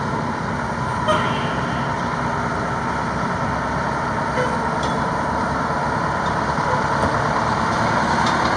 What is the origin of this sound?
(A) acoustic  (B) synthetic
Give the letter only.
A